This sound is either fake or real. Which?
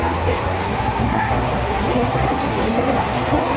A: fake